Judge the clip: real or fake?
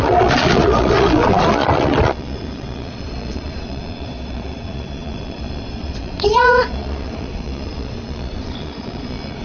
fake